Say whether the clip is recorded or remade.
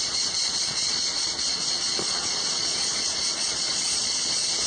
remade